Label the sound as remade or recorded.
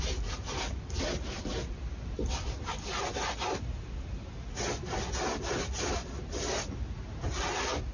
recorded